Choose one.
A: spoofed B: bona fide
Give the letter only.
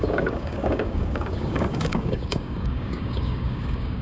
A